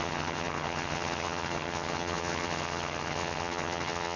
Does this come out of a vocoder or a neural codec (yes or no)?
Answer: yes